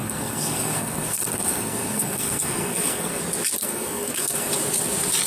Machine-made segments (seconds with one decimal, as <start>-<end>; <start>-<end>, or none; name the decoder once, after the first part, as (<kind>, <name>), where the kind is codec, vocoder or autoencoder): 0.0-3.2 (codec, SNAC); 3.6-4.5